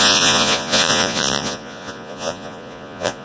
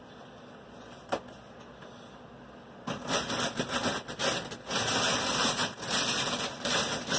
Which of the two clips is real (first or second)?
second